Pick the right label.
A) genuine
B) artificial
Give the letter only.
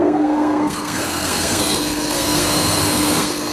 B